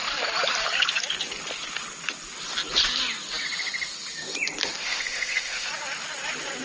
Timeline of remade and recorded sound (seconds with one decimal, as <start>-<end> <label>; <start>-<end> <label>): 0.0-4.8 recorded; 4.8-5.7 remade; 5.7-6.6 recorded